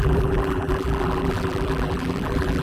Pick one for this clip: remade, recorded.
remade